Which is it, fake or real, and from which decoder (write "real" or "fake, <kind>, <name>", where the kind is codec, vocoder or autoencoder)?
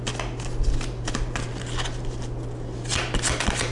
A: real